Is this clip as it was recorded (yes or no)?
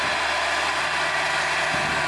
yes